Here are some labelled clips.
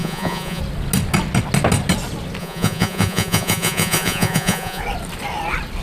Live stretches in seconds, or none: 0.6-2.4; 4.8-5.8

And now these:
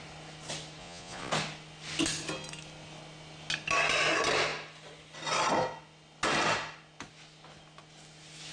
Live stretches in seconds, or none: 0.0-0.8; 1.3-8.5

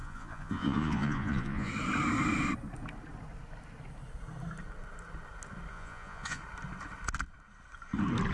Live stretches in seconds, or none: 1.7-5.7; 6.4-8.3

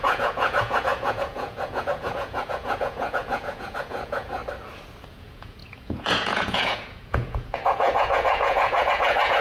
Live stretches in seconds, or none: 4.4-5.1

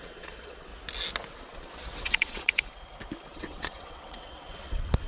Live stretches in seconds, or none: 0.7-1.4; 2.7-3.3

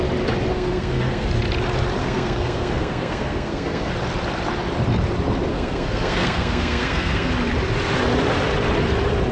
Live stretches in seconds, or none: 0.0-0.5; 1.3-2.0; 3.9-5.5; 7.3-9.3

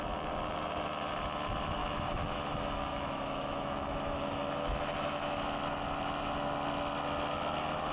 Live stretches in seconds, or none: 0.0-1.8; 5.4-7.9